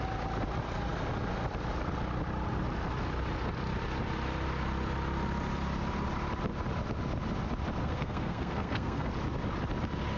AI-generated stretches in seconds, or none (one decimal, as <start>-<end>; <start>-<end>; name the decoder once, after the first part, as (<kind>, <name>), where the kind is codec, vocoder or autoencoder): 7.8-9.1 (codec, SNAC)